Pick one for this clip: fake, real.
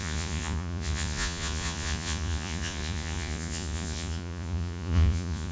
fake